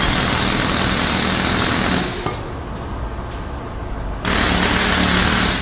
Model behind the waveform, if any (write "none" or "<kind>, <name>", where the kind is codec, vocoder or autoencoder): none